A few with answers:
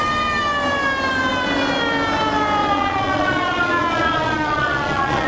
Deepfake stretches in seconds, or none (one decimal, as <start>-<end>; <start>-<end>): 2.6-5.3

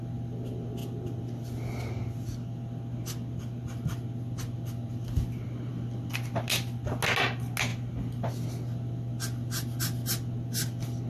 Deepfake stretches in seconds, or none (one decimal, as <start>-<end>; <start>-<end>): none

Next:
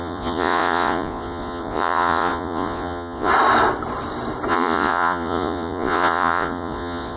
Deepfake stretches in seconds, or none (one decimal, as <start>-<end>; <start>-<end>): 0.0-3.3; 4.5-7.2

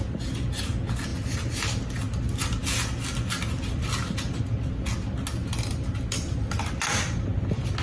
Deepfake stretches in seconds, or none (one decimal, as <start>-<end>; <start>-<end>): none